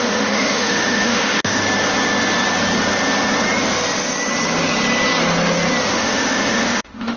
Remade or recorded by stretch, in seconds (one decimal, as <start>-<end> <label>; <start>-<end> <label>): 0.0-1.6 remade; 1.6-5.9 recorded; 5.9-7.2 remade

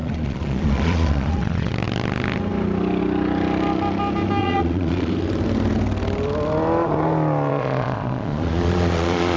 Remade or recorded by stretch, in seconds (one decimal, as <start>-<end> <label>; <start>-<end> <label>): 0.0-1.7 remade; 1.7-4.4 recorded; 4.4-5.1 remade; 5.1-7.5 recorded; 7.5-9.4 remade

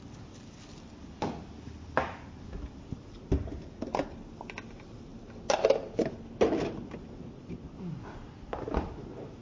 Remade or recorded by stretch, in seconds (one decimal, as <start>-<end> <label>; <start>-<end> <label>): 0.0-9.4 recorded

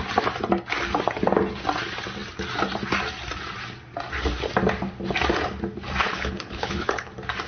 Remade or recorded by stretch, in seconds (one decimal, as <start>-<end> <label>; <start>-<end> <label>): 0.0-6.0 recorded; 6.0-7.1 remade; 7.1-7.5 recorded

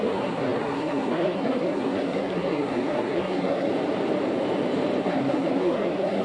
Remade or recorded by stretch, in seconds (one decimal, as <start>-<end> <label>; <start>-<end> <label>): 0.0-3.7 remade; 3.7-5.0 recorded; 5.0-6.2 remade

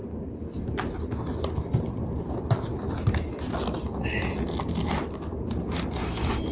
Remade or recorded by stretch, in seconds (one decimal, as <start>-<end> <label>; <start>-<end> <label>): 0.0-6.5 recorded

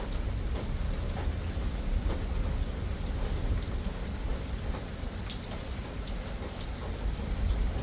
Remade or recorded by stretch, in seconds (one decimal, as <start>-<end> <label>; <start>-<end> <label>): 0.0-7.8 recorded

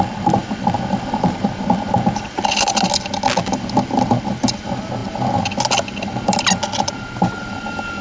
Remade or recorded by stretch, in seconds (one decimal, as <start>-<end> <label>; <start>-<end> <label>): 0.0-8.0 recorded